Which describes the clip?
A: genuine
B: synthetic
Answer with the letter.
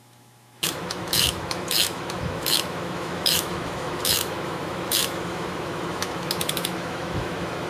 B